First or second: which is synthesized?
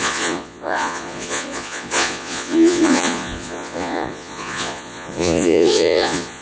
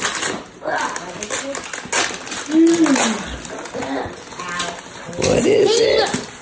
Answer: first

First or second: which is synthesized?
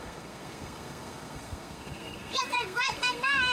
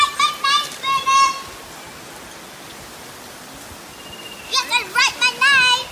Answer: first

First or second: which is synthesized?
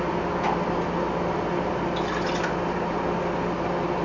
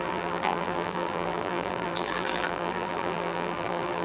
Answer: second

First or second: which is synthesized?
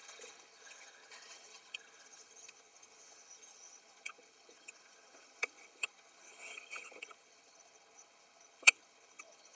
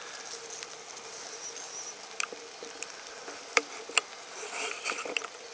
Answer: first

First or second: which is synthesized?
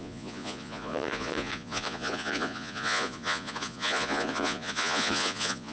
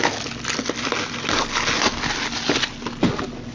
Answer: first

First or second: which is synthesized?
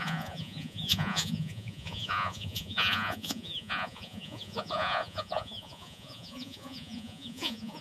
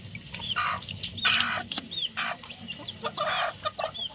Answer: first